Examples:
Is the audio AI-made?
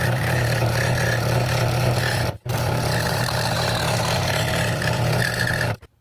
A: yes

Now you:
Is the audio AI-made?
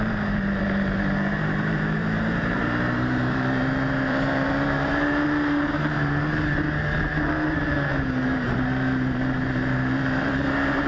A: yes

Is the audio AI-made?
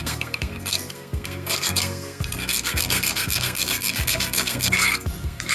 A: yes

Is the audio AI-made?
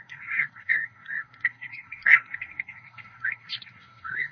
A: yes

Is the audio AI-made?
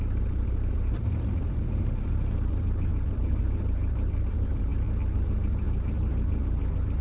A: yes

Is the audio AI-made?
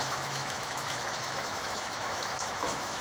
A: yes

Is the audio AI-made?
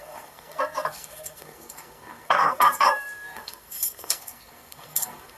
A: yes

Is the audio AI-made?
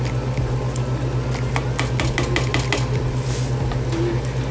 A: no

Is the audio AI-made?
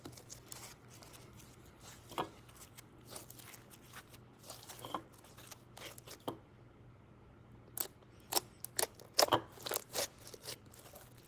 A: no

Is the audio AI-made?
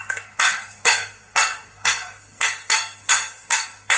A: yes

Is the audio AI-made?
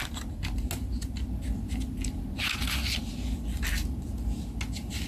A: no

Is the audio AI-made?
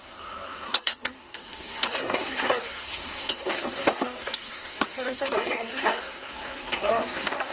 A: yes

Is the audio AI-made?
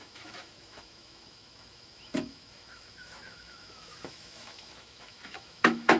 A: yes